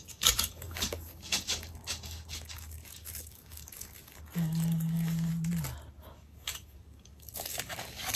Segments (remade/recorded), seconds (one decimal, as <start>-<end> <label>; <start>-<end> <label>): 0.0-5.3 remade; 5.3-6.0 recorded; 6.0-8.2 remade